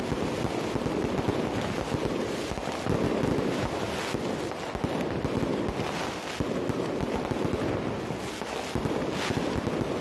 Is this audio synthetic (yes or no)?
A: no